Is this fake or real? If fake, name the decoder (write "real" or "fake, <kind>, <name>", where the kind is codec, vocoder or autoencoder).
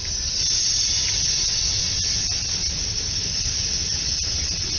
real